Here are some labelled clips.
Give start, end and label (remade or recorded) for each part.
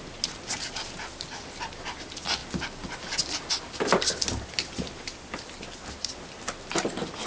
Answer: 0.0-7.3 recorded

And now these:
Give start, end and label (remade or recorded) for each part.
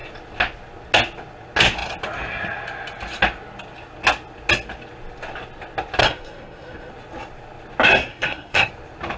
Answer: 0.0-6.0 recorded; 6.0-6.9 remade; 6.9-8.1 recorded; 8.1-8.7 remade; 8.7-9.2 recorded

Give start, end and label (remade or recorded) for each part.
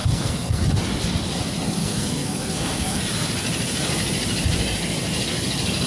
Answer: 0.0-0.6 remade; 0.6-1.8 recorded; 1.8-3.0 remade; 3.0-5.9 recorded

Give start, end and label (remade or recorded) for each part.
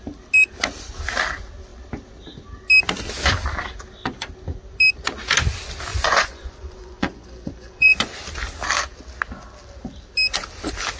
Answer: 0.0-5.9 recorded; 5.9-8.1 remade; 8.1-11.0 recorded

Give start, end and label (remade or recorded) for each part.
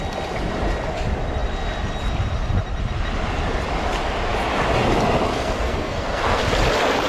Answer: 0.0-5.3 recorded; 5.3-6.4 remade; 6.4-7.1 recorded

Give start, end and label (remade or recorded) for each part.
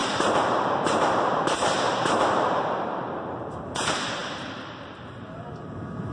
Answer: 0.0-6.1 remade